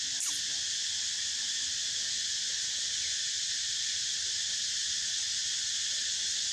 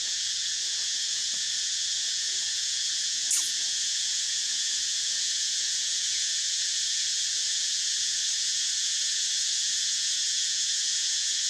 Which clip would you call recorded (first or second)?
first